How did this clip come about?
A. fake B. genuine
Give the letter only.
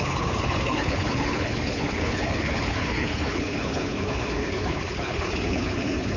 A